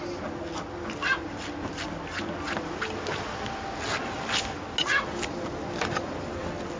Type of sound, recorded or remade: recorded